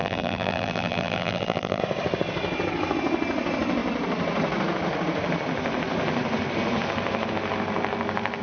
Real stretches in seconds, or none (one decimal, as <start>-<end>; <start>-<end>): 1.8-8.4